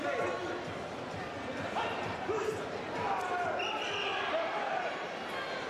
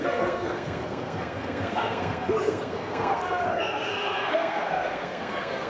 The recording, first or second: first